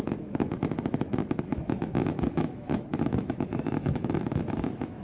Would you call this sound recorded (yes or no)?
no